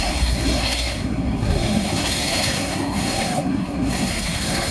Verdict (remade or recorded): remade